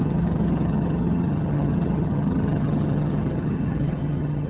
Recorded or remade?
remade